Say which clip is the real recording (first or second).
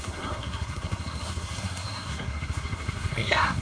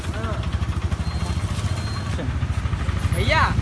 second